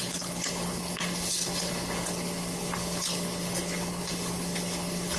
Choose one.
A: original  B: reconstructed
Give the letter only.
B